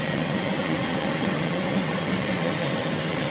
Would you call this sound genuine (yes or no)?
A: no